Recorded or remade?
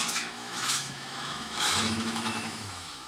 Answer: remade